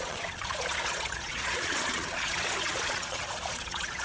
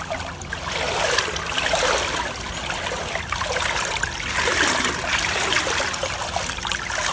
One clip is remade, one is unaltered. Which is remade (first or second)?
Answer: first